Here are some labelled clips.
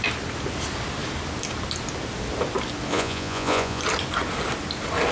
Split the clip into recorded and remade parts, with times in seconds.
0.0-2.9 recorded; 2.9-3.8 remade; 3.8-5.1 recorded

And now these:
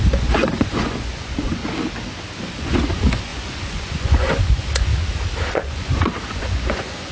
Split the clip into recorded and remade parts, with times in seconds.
0.0-1.6 remade; 1.6-2.5 recorded; 2.5-4.9 remade; 4.9-5.5 recorded; 5.5-7.1 remade

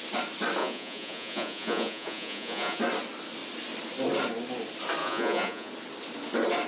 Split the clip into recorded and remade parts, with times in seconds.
0.0-0.6 recorded; 0.6-2.8 remade; 2.8-5.0 recorded; 5.0-5.7 remade; 5.7-6.7 recorded

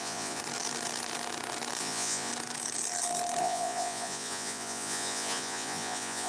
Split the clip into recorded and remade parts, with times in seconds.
0.0-0.4 remade; 0.4-1.8 recorded; 1.8-2.3 remade; 2.3-3.4 recorded; 3.4-6.3 remade

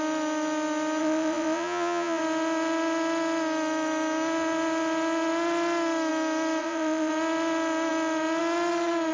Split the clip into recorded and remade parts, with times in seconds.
0.0-1.0 recorded; 1.0-2.2 remade; 2.2-6.6 recorded; 6.6-7.1 remade; 7.1-9.1 recorded